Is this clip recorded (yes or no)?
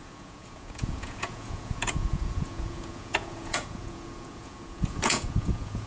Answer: no